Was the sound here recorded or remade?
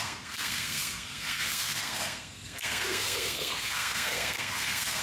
remade